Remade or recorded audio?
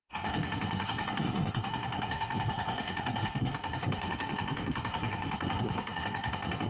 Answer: remade